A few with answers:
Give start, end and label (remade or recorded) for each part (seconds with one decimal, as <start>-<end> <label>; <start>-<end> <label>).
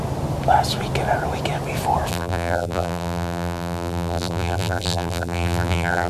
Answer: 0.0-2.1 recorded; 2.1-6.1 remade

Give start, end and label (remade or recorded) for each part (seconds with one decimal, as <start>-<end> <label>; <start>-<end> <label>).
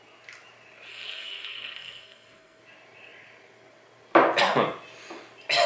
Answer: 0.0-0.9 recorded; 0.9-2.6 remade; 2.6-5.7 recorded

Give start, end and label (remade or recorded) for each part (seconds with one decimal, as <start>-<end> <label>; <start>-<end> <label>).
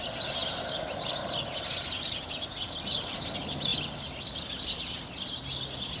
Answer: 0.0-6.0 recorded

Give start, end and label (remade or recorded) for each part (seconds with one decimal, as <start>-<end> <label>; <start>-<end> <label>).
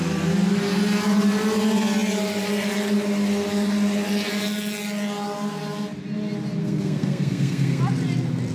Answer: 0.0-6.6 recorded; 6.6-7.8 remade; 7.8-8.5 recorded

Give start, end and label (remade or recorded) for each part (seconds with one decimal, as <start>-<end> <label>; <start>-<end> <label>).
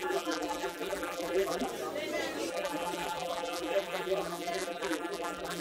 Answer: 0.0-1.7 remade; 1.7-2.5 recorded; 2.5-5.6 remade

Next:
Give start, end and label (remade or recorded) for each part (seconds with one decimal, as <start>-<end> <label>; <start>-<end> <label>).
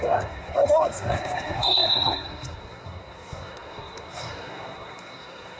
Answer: 0.0-5.6 remade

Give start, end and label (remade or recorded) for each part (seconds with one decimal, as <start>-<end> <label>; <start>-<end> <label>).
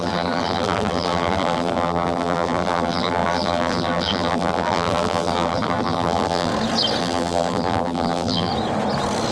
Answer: 0.0-6.5 remade; 6.5-7.0 recorded; 7.0-8.5 remade; 8.5-9.3 recorded